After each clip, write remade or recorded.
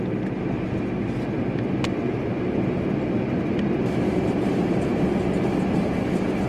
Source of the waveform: recorded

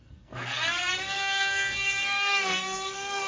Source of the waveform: remade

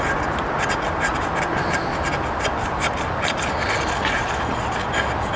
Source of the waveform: recorded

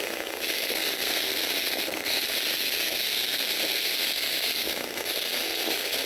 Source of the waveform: remade